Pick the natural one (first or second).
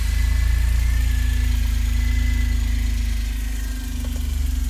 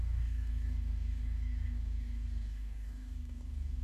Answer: first